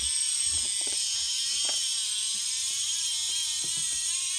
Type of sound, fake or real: real